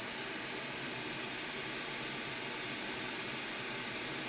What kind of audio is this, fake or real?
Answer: real